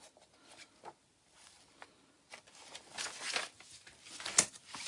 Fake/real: real